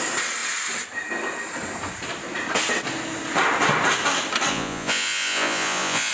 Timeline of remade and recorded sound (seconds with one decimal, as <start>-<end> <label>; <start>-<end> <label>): 0.0-4.5 recorded; 4.5-6.1 remade